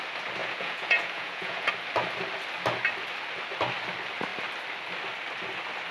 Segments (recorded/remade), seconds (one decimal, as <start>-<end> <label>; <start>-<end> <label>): 0.0-0.4 recorded; 0.4-1.7 remade; 1.7-5.9 recorded